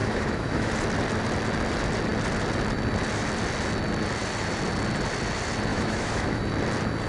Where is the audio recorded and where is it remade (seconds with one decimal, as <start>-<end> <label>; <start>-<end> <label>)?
0.0-0.7 remade; 0.7-5.7 recorded; 5.7-6.4 remade; 6.4-7.1 recorded